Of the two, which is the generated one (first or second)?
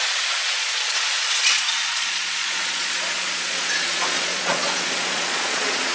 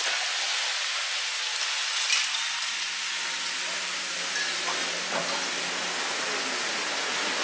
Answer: first